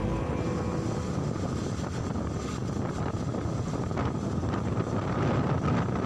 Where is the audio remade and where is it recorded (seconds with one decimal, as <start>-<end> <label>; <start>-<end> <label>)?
0.0-6.1 recorded